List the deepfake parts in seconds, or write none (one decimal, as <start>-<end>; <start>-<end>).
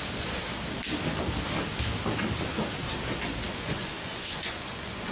0.0-0.4; 3.5-5.1